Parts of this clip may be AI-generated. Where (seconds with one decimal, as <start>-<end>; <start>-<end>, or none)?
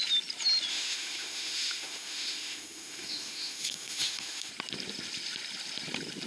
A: 0.7-4.5